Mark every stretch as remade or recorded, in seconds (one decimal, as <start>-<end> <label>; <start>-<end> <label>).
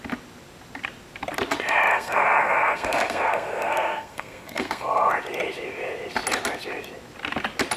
0.0-1.9 recorded; 1.9-5.1 remade; 5.1-7.8 recorded